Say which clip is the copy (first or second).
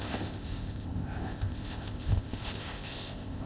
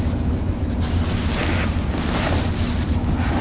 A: first